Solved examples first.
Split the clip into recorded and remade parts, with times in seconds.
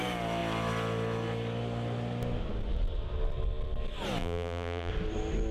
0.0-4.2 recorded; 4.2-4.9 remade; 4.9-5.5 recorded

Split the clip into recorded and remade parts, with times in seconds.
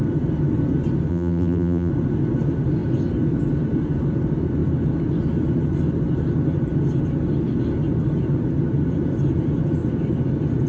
0.0-1.1 recorded; 1.1-1.9 remade; 1.9-10.7 recorded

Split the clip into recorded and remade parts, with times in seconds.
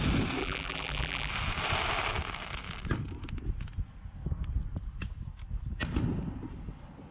0.0-0.4 recorded; 0.4-1.3 remade; 1.3-7.1 recorded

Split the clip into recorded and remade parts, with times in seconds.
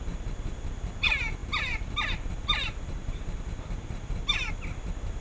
0.0-1.4 recorded; 1.4-4.5 remade; 4.5-5.2 recorded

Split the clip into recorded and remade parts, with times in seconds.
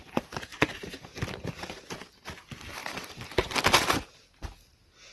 0.0-2.8 recorded; 2.8-4.1 remade; 4.1-5.1 recorded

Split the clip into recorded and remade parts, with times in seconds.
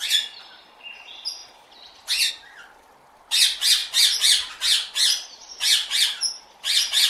0.0-7.1 recorded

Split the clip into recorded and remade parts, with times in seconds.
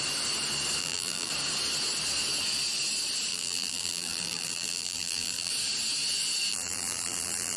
0.0-0.8 recorded; 0.8-1.3 remade; 1.3-3.3 recorded; 3.3-5.5 remade; 5.5-6.5 recorded; 6.5-7.6 remade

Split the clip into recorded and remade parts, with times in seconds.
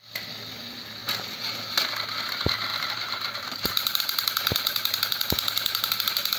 0.0-1.0 recorded; 1.0-1.7 remade; 1.7-2.7 recorded; 2.7-4.0 remade; 4.0-6.4 recorded